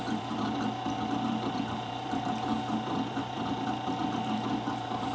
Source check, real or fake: fake